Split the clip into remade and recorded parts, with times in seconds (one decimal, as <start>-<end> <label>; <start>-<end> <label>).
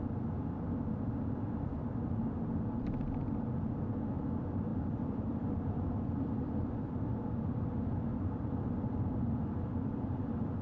0.0-4.7 recorded; 4.7-6.7 remade; 6.7-8.1 recorded; 8.1-10.2 remade; 10.2-10.6 recorded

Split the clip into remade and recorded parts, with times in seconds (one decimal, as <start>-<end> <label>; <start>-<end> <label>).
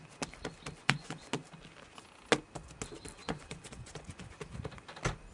0.0-0.8 recorded; 0.8-1.3 remade; 1.3-3.2 recorded; 3.2-4.3 remade; 4.3-5.3 recorded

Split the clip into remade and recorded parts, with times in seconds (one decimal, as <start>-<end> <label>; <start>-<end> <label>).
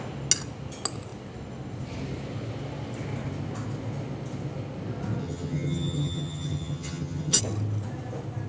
0.0-5.2 recorded; 5.2-7.4 remade; 7.4-8.5 recorded